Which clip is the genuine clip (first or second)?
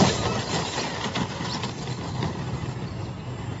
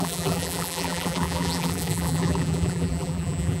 first